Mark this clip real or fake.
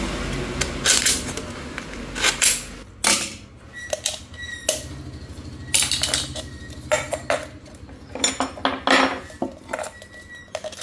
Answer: real